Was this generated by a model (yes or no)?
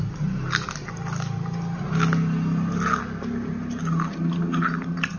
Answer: no